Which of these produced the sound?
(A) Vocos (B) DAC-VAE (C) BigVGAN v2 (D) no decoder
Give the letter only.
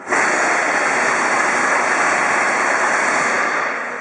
D